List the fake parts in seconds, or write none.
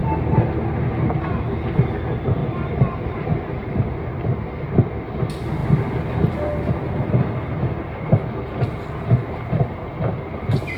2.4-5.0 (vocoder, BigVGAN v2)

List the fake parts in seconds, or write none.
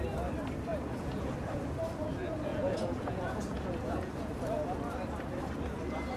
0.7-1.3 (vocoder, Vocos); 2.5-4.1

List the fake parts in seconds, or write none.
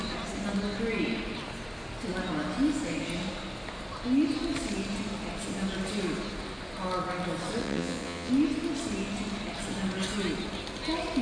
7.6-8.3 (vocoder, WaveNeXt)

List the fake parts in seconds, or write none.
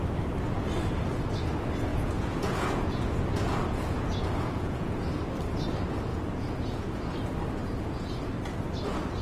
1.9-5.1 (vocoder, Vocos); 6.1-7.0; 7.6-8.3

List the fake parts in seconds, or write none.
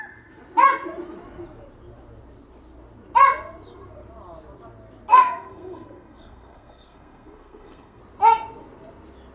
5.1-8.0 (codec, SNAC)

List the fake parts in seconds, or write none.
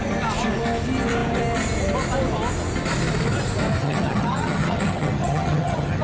3.8-6.0 (vocoder, HiFi-GAN)